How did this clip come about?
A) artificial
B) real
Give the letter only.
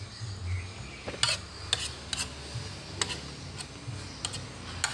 B